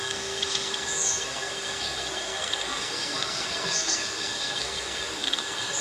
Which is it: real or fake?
fake